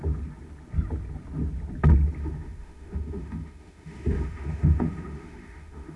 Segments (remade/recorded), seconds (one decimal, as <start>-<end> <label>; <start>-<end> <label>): 0.0-2.2 recorded; 2.2-6.0 remade